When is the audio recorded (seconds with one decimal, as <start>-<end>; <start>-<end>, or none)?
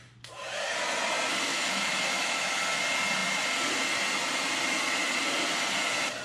0.0-1.5; 2.5-6.2